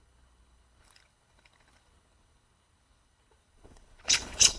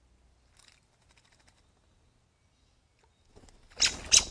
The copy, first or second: first